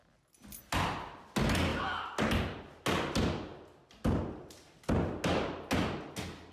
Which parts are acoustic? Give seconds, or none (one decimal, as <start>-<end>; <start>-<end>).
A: 0.0-6.5